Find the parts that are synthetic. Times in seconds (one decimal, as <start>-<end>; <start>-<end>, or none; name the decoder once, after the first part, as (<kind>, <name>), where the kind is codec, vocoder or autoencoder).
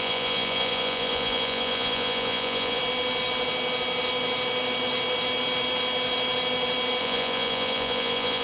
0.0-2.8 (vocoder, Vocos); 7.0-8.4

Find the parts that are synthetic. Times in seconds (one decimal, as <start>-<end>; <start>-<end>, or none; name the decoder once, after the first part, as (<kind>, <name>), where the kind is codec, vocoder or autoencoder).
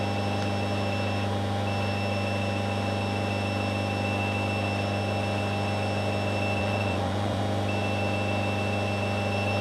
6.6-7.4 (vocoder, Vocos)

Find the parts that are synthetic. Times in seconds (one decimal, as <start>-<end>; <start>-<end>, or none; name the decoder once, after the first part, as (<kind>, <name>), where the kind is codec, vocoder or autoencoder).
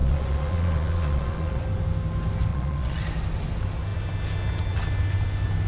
0.0-1.6 (vocoder, Vocos); 2.5-3.0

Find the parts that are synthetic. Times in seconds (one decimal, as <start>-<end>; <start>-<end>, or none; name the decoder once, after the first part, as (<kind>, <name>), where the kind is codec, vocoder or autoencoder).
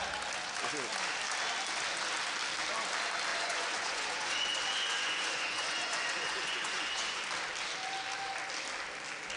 3.3-7.2 (vocoder, Vocos)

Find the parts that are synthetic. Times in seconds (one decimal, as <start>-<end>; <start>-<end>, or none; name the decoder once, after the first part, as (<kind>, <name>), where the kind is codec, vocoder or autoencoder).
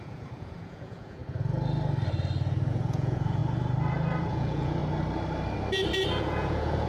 0.0-1.2 (vocoder, Vocos); 2.7-3.4; 4.3-4.8; 6.1-6.9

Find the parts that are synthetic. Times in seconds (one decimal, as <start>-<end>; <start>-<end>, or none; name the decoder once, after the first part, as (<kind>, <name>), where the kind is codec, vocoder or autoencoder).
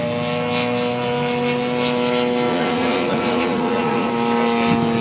2.5-4.1 (vocoder, Vocos)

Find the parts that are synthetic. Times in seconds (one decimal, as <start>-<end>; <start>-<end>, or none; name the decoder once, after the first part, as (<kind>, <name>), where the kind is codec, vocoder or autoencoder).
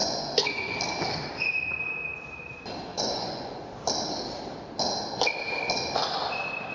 0.0-0.7 (vocoder, Vocos); 2.9-3.7